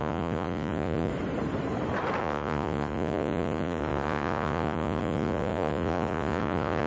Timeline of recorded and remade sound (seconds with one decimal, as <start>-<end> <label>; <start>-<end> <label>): 0.0-1.1 remade; 1.1-2.2 recorded; 2.2-6.9 remade